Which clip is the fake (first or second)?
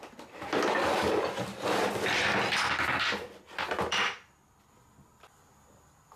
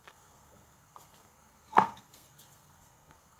second